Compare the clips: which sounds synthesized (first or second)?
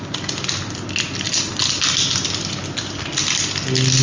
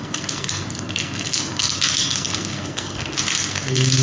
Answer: second